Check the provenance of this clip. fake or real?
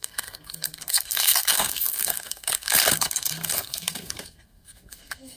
fake